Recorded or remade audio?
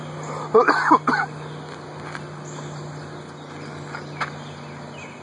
recorded